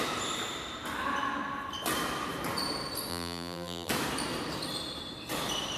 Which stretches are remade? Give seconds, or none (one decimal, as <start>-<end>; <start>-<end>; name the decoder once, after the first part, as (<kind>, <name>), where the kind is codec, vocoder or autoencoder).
3.1-3.9 (vocoder, BigVGAN v2)